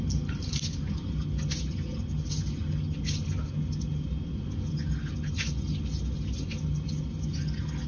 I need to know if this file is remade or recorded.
recorded